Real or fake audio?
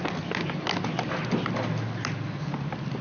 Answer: real